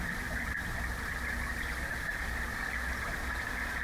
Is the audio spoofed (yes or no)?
no